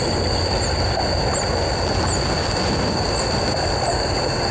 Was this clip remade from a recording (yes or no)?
no